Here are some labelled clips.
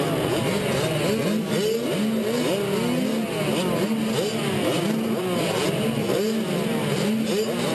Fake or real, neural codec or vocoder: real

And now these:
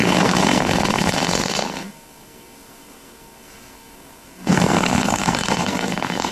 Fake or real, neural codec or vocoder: fake, codec, SNAC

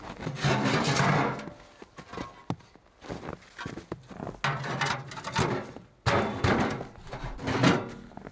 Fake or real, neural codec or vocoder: real